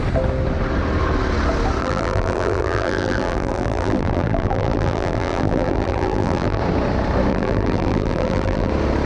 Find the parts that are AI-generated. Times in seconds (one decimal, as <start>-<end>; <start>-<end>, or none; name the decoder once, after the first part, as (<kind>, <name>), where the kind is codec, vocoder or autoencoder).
1.8-6.6 (vocoder, BigVGAN v2); 7.3-8.7